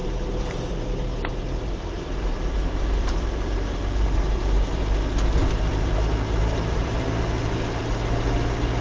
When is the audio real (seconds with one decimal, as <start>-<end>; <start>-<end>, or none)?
4.8-5.7; 7.8-8.8